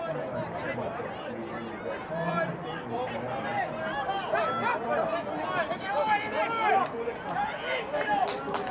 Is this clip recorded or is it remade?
recorded